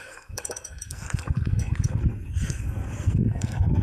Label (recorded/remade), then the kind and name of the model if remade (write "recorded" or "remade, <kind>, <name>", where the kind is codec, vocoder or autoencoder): remade, codec, SNAC